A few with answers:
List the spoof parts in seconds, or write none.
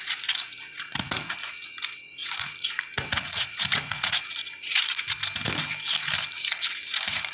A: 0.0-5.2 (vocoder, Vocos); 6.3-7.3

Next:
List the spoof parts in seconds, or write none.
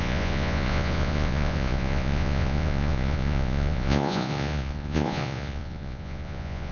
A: 0.0-6.7 (vocoder, Vocos)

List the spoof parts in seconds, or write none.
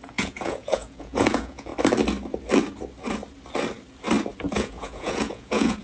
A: 0.0-1.7 (vocoder, Vocos); 4.5-5.8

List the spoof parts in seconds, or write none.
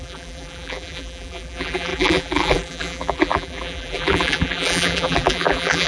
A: 0.0-5.9 (vocoder, BigVGAN v2)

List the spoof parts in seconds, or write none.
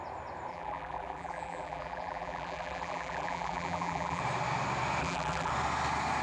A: 0.5-4.2 (vocoder, BigVGAN v2); 5.0-5.5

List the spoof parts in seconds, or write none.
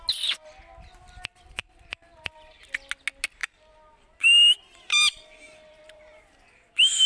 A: 1.6-2.6 (vocoder, BigVGAN v2); 3.4-7.1